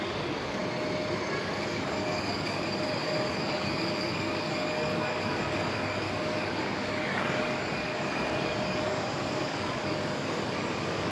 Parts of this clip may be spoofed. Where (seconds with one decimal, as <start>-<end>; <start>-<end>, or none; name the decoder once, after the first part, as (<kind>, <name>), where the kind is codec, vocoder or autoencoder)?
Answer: 0.0-0.6 (codec, DAC); 1.4-11.1